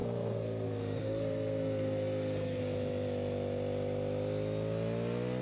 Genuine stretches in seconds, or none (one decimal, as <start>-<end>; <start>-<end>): 2.6-5.4